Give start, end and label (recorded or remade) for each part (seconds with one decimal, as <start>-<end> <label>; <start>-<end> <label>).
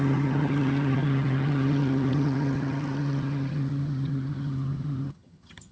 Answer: 0.0-5.7 remade